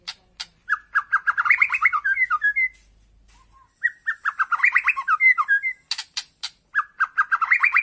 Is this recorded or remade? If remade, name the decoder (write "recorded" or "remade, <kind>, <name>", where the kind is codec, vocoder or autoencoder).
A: recorded